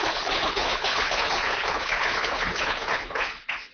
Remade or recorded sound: remade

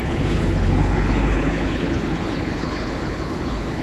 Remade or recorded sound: remade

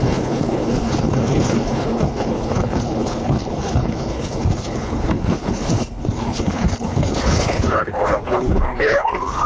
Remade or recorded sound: remade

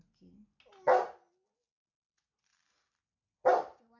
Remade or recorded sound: recorded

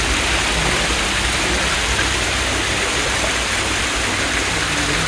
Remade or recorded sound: recorded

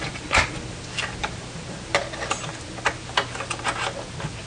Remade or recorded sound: recorded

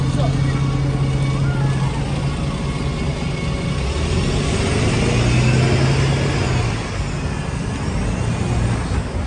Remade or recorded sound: recorded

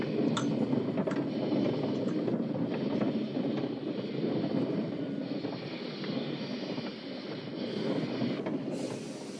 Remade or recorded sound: recorded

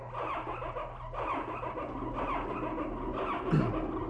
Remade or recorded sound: recorded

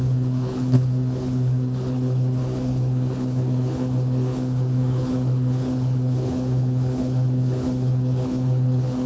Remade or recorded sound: remade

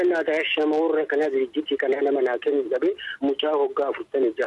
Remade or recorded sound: recorded